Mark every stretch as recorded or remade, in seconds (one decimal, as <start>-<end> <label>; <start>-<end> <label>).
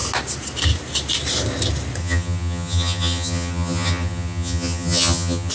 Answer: 0.0-2.0 recorded; 2.0-5.5 remade